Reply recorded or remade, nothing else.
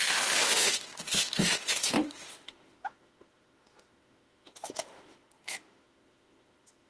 remade